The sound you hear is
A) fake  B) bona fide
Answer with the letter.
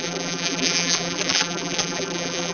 A